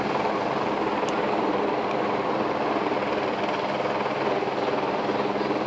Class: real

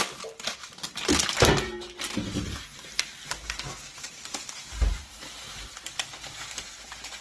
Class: real